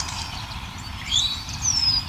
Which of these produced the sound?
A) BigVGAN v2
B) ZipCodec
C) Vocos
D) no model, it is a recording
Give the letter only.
A